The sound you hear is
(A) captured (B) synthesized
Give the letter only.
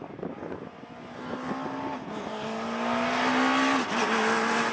A